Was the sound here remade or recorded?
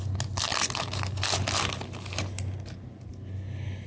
recorded